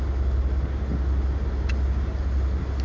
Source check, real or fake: real